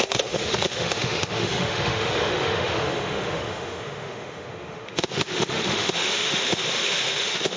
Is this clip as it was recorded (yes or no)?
no